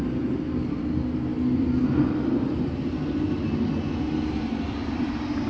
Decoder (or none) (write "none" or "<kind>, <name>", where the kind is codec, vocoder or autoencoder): vocoder, BigVGAN v2